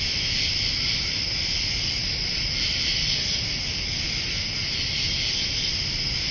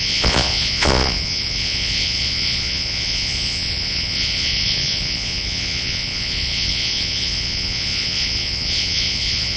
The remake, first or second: second